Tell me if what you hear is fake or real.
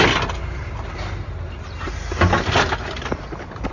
real